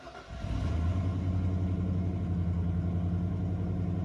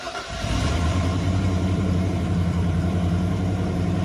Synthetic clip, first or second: second